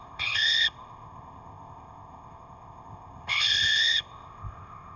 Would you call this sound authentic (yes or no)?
no